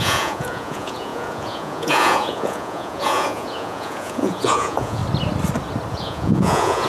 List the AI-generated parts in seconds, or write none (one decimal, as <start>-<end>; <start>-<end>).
0.0-5.0; 5.9-6.9